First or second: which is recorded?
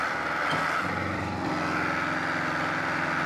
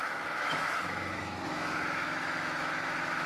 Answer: first